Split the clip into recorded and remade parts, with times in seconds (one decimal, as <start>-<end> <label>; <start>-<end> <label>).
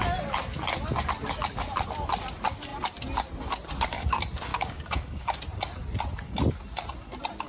0.0-4.5 recorded; 4.5-5.4 remade; 5.4-7.5 recorded